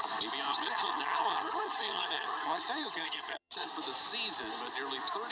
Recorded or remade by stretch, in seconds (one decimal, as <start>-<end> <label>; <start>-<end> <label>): 0.0-0.5 recorded; 0.5-3.7 remade; 3.7-5.3 recorded